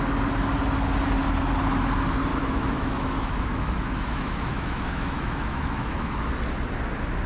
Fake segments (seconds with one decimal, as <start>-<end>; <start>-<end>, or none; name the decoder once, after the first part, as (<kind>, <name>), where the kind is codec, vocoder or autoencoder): 2.3-6.3 (autoencoder, DAC-VAE)